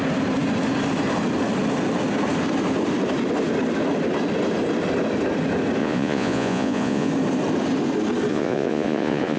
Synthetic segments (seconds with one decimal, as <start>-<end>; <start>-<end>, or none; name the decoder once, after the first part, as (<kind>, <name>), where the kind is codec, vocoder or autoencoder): 5.8-7.1 (vocoder, Vocos); 8.3-9.4